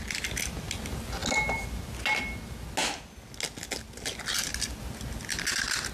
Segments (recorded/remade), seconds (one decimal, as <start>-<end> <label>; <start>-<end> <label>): 0.0-5.9 recorded